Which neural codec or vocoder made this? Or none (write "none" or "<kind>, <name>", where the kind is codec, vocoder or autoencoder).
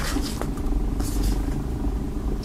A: none